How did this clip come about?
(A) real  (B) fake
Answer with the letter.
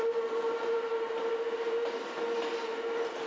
A